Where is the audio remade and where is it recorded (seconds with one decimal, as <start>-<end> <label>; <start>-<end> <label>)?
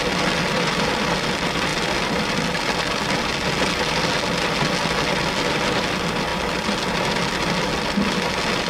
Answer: 0.0-8.7 recorded